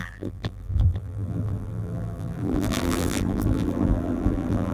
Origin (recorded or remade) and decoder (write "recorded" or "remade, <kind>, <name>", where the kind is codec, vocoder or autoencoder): remade, vocoder, BigVGAN v2